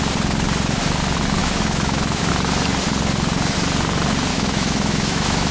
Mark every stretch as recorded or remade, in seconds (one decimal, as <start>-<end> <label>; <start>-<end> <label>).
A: 0.0-1.4 recorded; 1.4-2.3 remade; 2.3-4.3 recorded; 4.3-5.5 remade